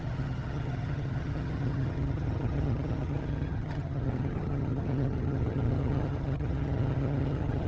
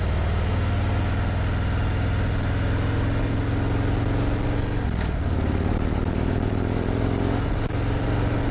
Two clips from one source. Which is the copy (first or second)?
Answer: first